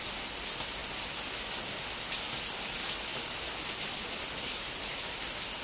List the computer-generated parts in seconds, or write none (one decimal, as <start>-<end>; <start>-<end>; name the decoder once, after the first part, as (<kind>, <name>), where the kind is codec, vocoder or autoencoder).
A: none